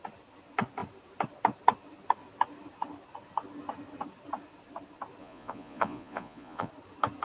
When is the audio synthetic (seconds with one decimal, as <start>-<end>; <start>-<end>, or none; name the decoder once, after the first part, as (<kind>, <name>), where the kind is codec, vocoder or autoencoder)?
5.2-6.7 (vocoder, Vocos)